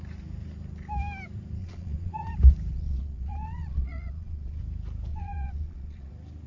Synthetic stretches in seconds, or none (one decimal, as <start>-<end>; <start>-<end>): 1.6-2.3; 2.7-4.6; 5.1-6.1